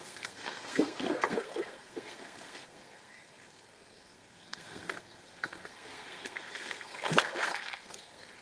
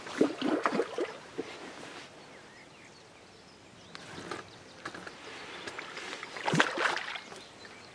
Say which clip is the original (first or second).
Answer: second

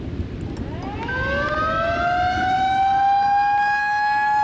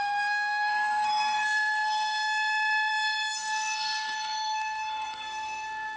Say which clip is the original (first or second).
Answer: first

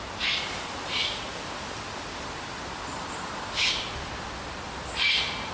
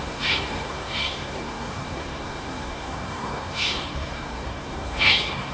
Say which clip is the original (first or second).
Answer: first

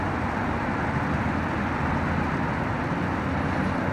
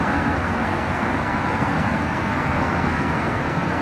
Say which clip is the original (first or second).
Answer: first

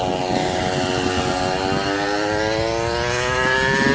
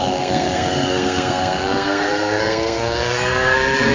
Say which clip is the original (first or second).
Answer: first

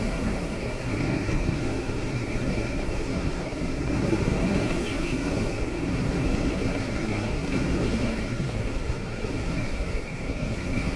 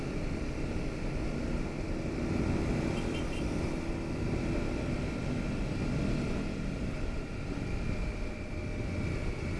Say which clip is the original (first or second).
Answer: second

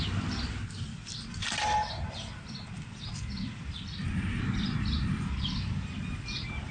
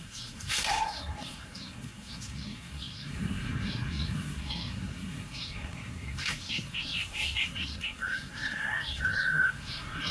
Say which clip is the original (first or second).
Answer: first